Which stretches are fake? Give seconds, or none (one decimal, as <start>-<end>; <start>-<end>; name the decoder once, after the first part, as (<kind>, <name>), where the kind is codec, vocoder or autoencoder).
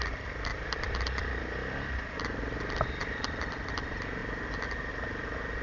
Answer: 0.5-1.4 (vocoder, BigVGAN v2); 3.0-3.7